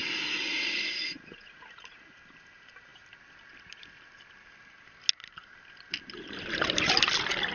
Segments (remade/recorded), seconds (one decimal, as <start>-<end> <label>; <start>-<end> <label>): 0.0-2.0 remade; 2.0-7.5 recorded